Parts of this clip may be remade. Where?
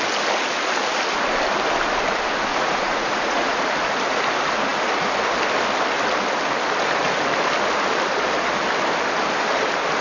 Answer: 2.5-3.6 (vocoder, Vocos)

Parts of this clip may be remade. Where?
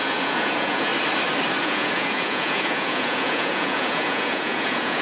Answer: 0.0-0.9 (vocoder, Vocos); 1.6-5.0